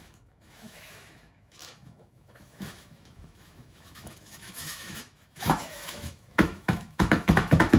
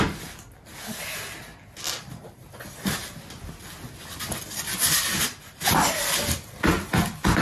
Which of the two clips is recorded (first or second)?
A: second